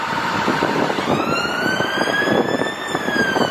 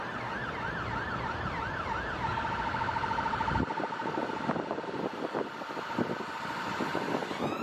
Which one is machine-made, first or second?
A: first